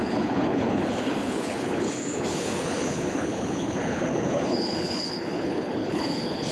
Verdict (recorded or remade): remade